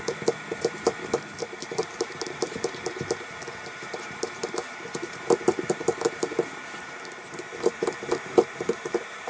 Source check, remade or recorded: remade